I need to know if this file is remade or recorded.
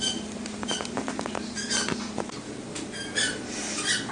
recorded